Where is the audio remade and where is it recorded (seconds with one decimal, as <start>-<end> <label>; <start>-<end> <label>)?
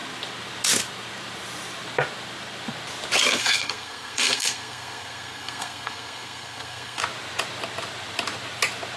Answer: 0.0-3.4 recorded; 3.4-7.0 remade; 7.0-9.0 recorded